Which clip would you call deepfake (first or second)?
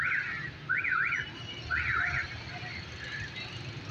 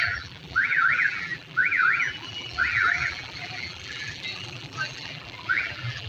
second